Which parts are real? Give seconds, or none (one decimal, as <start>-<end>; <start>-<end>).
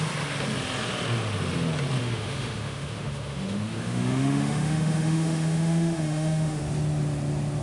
0.0-2.0; 6.6-7.6